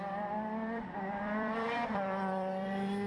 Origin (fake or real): fake